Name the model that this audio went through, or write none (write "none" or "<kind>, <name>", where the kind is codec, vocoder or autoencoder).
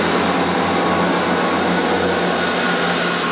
none